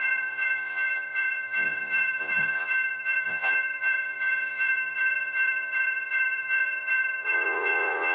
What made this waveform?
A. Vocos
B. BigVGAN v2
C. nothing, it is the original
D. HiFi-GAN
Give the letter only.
A